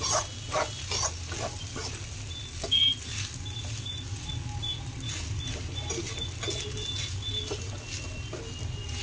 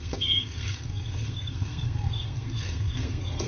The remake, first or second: second